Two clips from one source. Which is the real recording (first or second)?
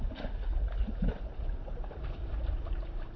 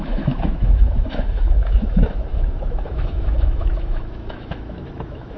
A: first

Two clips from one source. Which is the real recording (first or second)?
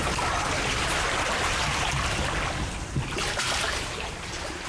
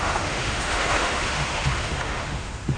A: first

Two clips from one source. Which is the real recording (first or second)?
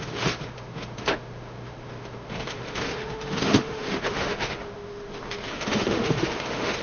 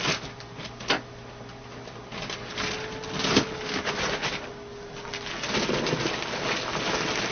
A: second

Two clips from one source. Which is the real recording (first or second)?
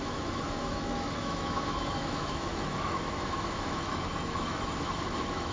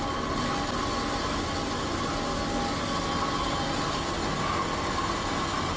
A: second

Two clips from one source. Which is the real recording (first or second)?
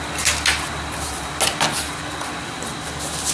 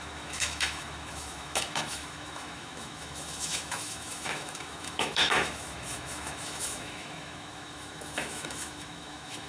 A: first